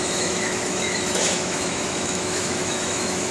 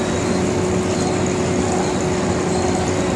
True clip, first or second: second